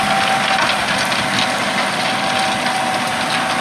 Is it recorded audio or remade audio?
recorded